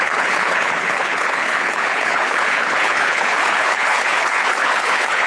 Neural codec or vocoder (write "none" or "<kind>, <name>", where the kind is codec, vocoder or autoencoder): codec, HILCodec